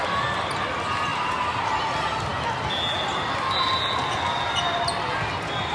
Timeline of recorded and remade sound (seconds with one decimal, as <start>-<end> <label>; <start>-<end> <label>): 0.0-1.1 recorded; 1.1-1.9 remade; 1.9-5.7 recorded